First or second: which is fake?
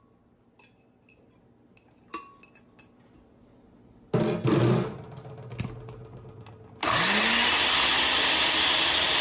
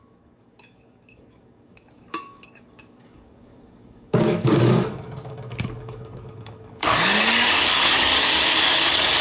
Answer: second